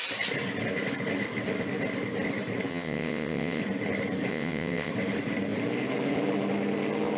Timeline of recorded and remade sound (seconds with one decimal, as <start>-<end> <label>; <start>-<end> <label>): 0.0-2.7 recorded; 2.7-3.6 remade; 3.6-4.3 recorded; 4.3-4.9 remade; 4.9-7.2 recorded